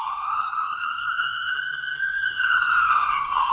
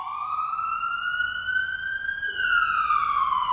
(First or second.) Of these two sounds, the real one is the second